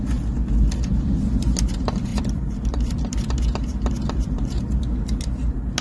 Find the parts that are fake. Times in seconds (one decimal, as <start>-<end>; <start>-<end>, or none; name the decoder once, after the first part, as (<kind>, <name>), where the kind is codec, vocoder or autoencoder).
2.1-3.3 (vocoder, BigVGAN v2); 3.7-4.6